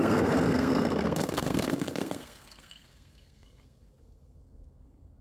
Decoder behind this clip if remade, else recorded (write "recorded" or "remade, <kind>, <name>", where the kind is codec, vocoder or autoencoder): remade, codec, SNAC